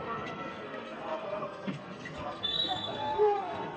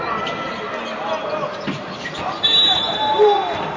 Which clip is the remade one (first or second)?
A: first